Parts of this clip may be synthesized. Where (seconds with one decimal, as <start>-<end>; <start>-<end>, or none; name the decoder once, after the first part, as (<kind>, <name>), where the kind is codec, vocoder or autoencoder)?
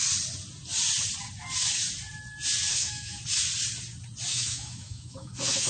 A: 2.7-3.2 (autoencoder, DAC-VAE); 4.3-5.7